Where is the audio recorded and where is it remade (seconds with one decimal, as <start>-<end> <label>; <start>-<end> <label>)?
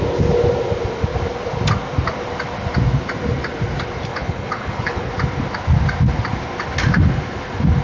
0.0-4.1 recorded; 4.1-5.1 remade; 5.1-7.8 recorded